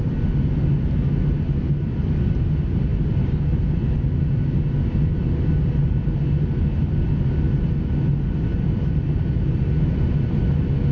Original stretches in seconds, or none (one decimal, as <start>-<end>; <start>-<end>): 0.0-10.9